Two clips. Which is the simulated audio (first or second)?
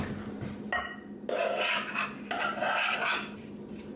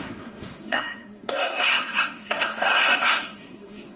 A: second